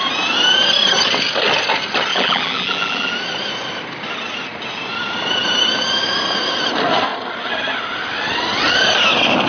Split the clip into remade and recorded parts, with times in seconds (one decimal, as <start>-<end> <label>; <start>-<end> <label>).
0.0-2.1 recorded; 2.1-3.1 remade; 3.1-9.5 recorded